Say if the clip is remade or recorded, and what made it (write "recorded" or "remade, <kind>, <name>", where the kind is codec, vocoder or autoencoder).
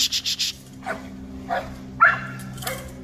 recorded